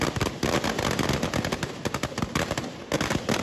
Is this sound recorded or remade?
recorded